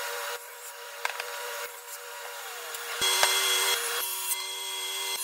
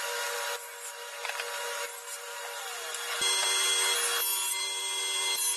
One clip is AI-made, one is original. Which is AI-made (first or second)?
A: first